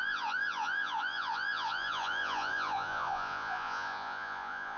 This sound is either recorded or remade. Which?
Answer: remade